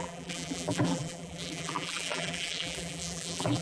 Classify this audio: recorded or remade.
remade